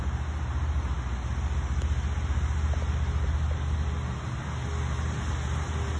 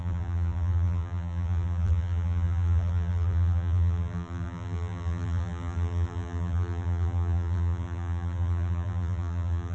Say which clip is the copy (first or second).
second